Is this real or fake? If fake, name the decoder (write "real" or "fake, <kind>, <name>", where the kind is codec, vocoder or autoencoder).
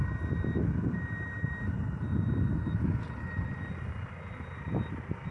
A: real